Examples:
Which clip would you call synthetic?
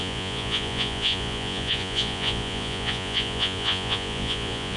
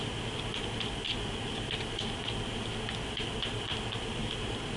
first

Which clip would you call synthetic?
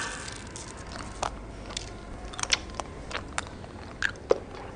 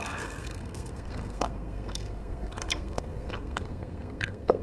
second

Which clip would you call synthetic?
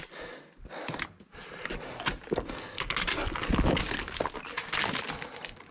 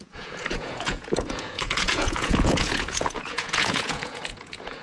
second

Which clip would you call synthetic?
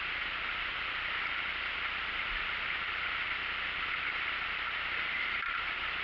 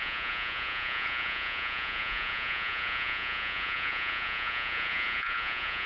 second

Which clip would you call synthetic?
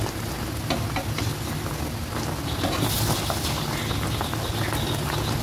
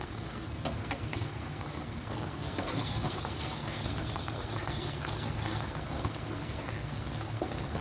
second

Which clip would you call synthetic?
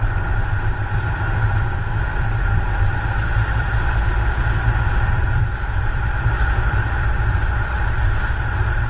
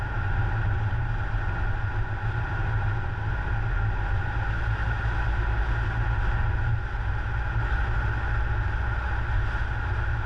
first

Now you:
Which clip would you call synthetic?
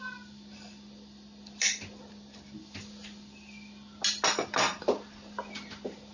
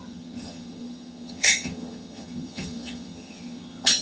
second